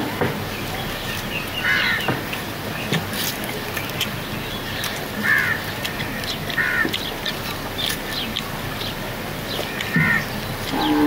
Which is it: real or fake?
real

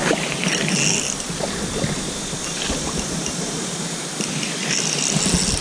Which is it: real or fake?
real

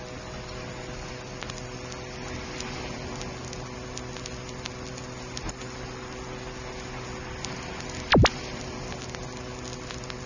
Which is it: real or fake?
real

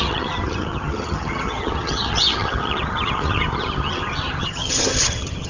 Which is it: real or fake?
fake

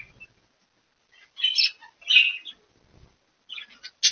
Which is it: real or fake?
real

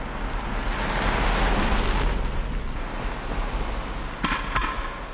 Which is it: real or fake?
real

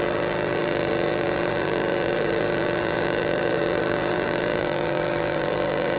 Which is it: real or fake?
fake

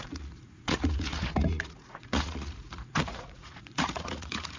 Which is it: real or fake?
fake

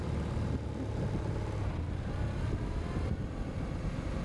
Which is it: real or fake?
real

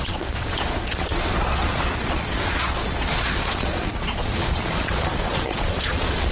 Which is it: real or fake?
fake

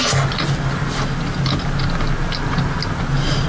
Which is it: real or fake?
real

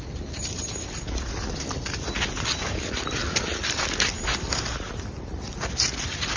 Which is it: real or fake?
real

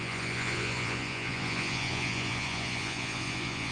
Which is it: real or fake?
fake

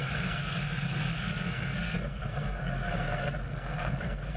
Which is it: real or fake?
fake